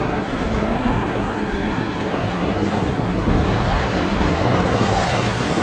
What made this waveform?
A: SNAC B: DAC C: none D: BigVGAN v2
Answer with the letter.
A